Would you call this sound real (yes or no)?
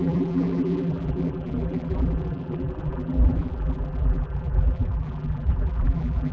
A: no